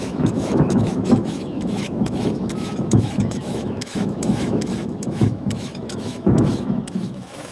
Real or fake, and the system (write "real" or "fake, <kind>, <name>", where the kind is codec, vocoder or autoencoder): fake, autoencoder, DAC-VAE